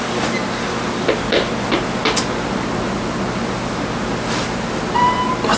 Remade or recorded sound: recorded